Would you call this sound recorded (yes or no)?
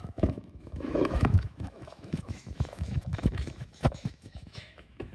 no